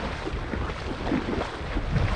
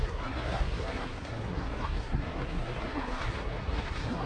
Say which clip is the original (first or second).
first